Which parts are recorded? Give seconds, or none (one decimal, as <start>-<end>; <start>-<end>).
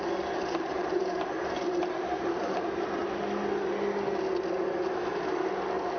3.0-6.0